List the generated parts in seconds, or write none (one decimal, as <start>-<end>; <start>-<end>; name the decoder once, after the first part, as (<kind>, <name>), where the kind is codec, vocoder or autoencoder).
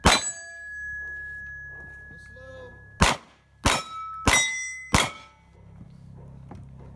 none